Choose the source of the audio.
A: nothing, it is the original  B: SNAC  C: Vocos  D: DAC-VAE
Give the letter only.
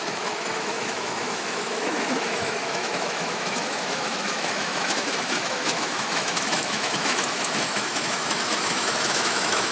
D